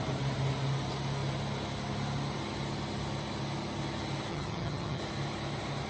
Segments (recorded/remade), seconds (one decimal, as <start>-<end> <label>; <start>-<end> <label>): 0.0-4.3 recorded; 4.3-5.0 remade; 5.0-5.9 recorded